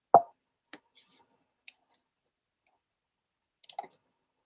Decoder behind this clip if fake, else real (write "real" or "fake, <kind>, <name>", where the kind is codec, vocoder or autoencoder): real